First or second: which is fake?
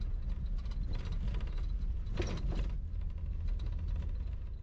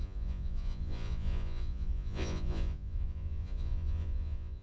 second